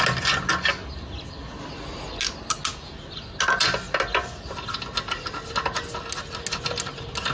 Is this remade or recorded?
recorded